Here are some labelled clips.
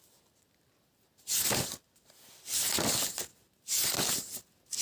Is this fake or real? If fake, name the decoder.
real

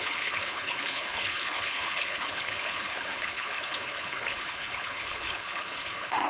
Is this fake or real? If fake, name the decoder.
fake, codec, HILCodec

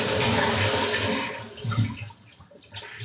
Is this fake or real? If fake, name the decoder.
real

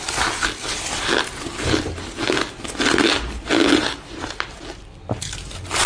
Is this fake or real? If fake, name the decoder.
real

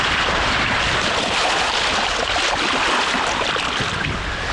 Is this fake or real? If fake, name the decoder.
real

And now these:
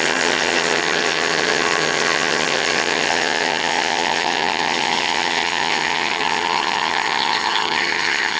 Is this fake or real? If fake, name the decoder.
fake, vocoder, HiFi-GAN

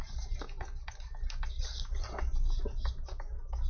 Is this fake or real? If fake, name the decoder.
real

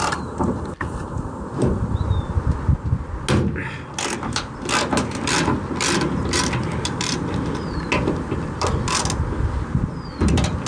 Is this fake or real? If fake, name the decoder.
real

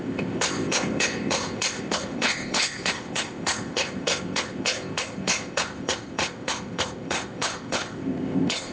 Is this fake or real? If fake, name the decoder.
fake, codec, ZipCodec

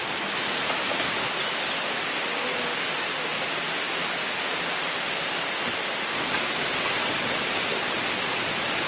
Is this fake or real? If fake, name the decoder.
real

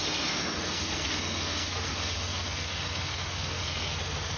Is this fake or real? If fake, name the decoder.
fake, codec, SNAC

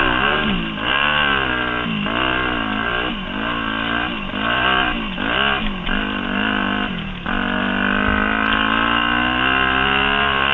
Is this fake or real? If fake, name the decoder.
real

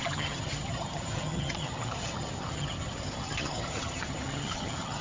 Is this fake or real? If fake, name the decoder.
fake, vocoder, HiFi-GAN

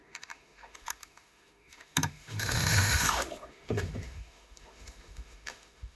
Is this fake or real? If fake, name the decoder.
fake, autoencoder, DAC-VAE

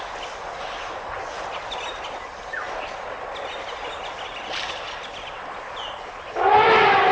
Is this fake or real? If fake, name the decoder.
real